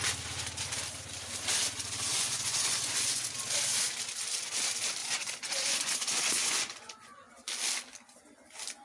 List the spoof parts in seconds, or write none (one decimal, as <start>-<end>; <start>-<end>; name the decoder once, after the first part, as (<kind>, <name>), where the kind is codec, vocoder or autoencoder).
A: 2.1-3.3 (vocoder, Vocos); 5.0-7.3